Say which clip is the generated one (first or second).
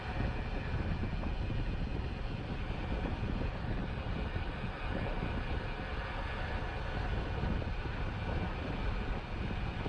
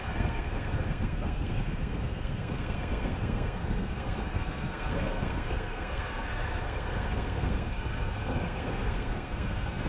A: second